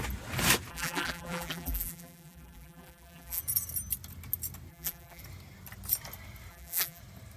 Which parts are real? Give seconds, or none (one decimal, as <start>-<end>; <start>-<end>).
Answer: 0.0-0.7; 3.4-4.7; 5.2-6.5; 7.0-7.4